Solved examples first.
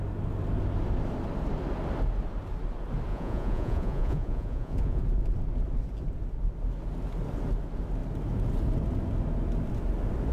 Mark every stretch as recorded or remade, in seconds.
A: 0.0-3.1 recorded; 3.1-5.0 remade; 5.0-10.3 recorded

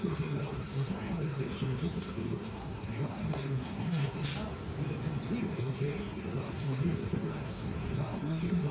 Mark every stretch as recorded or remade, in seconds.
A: 0.0-4.3 remade; 4.3-5.4 recorded; 5.4-8.7 remade